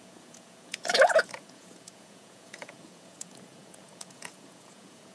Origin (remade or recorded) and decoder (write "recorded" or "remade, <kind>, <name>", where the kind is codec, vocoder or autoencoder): remade, vocoder, Vocos